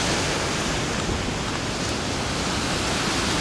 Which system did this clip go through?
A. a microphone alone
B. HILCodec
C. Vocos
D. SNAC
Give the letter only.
A